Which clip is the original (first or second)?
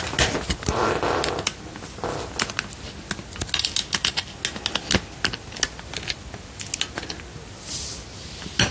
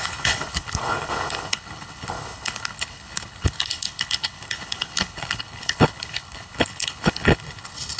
first